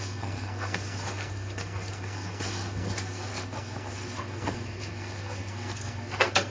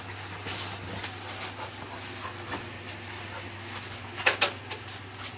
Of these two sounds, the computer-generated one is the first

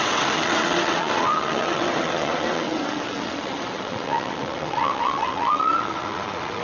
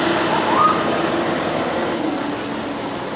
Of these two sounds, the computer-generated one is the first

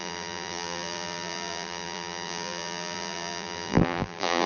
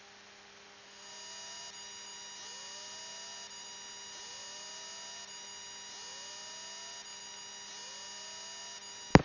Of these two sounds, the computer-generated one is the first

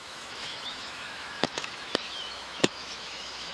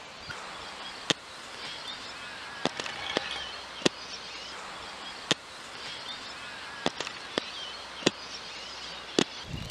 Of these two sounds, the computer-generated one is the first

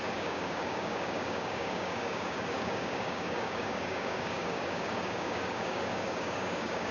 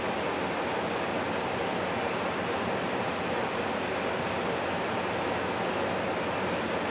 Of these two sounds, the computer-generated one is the first